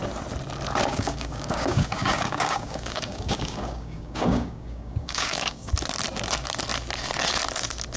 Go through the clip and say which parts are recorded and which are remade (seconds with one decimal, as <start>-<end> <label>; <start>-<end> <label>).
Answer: 0.0-0.9 recorded; 0.9-5.7 remade; 5.7-8.0 recorded